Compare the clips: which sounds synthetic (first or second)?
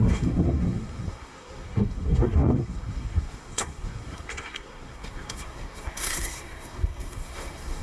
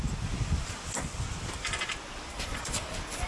first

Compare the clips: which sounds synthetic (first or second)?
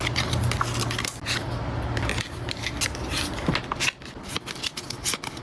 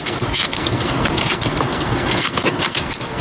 second